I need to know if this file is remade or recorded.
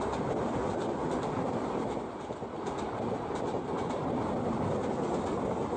recorded